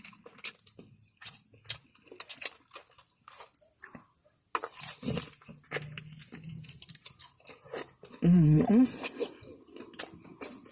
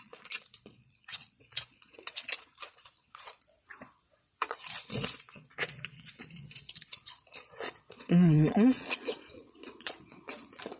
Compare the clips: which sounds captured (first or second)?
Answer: first